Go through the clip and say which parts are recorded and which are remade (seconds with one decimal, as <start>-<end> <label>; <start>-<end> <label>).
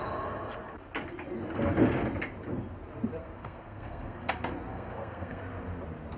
0.0-3.2 recorded; 3.2-4.3 remade; 4.3-4.7 recorded; 4.7-5.4 remade; 5.4-6.2 recorded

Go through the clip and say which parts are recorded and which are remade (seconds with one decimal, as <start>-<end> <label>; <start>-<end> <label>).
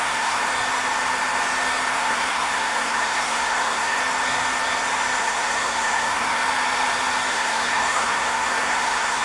0.0-0.4 remade; 0.4-1.9 recorded; 1.9-4.0 remade; 4.0-5.2 recorded; 5.2-6.4 remade; 6.4-7.3 recorded; 7.3-9.2 remade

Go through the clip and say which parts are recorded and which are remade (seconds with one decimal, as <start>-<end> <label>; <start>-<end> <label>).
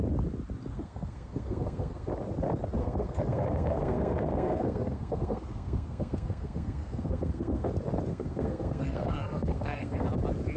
0.0-0.7 recorded; 0.7-2.1 remade; 2.1-2.8 recorded; 2.8-7.7 remade; 7.7-8.1 recorded; 8.1-10.1 remade; 10.1-10.6 recorded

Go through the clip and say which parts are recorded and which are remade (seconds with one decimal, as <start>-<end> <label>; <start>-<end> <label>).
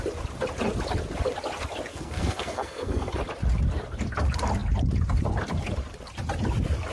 0.0-1.9 recorded; 1.9-3.1 remade; 3.1-6.9 recorded